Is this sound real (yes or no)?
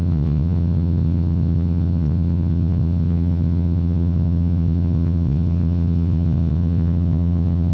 no